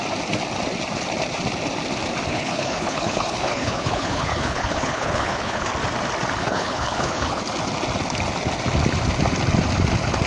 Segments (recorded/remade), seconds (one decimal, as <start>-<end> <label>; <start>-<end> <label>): 0.0-2.3 recorded; 2.3-5.7 remade; 5.7-6.4 recorded; 6.4-7.4 remade; 7.4-10.3 recorded